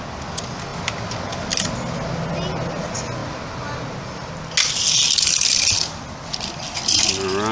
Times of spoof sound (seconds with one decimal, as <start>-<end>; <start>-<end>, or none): none